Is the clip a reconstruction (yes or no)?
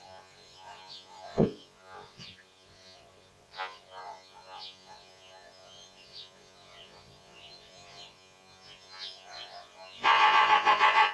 yes